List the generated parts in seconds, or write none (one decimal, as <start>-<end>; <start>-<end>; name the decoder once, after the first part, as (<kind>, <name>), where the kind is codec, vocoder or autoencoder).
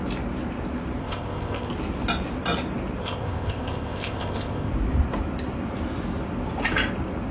1.0-1.7 (codec, ZipCodec); 3.0-4.7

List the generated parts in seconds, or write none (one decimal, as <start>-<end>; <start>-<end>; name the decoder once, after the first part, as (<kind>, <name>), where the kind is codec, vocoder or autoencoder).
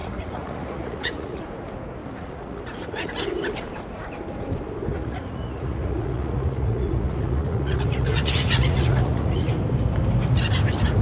0.0-1.4 (vocoder, Vocos); 2.0-3.1; 4.9-9.5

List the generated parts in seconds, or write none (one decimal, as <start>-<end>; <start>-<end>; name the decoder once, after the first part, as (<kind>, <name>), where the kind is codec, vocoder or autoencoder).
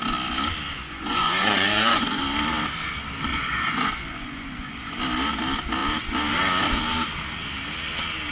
0.7-2.2 (vocoder, Vocos); 3.3-5.0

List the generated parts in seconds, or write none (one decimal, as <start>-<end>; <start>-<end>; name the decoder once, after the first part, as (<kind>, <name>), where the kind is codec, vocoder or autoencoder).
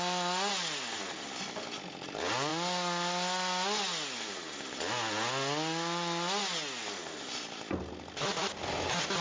none